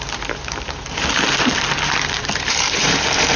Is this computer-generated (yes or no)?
yes